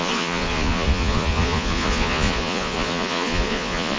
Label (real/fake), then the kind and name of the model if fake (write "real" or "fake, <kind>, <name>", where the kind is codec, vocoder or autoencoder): fake, vocoder, Vocos